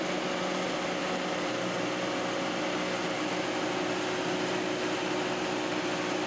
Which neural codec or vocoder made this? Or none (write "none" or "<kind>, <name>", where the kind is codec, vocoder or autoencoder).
none